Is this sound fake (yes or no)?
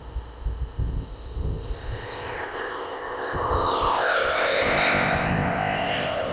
yes